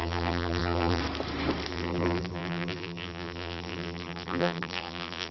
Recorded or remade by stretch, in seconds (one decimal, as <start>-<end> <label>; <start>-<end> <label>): 0.0-1.0 remade; 1.0-1.7 recorded; 1.7-5.3 remade

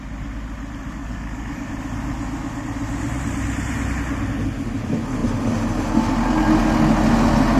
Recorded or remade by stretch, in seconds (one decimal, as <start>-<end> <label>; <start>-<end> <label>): 0.0-1.0 recorded; 1.0-1.7 remade; 1.7-7.6 recorded

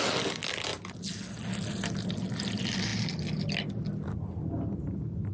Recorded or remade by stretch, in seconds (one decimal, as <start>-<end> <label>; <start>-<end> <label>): 0.0-5.3 recorded

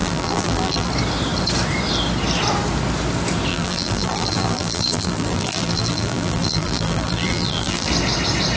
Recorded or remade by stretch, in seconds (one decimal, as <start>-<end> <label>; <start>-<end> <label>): 0.0-0.9 remade; 0.9-3.5 recorded; 3.5-7.9 remade; 7.9-8.6 recorded

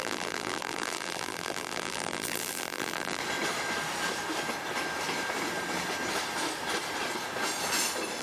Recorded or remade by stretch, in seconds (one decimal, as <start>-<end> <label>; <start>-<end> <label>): 0.0-3.2 remade; 3.2-8.2 recorded